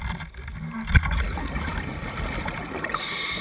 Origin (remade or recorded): recorded